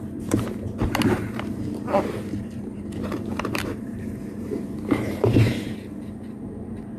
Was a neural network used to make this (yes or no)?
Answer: yes